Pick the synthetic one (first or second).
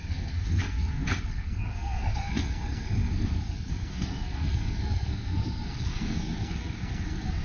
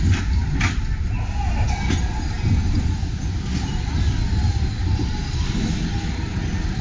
first